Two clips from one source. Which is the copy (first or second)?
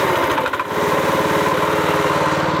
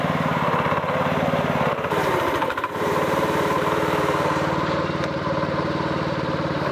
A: second